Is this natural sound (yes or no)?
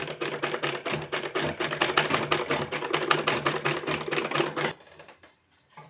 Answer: yes